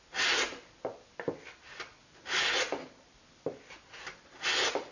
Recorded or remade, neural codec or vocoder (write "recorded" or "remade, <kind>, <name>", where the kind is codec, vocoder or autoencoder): recorded